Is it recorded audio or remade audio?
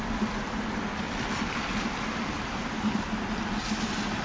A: recorded